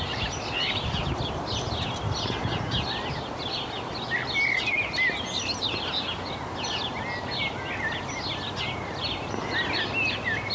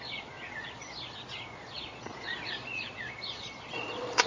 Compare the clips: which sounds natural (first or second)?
first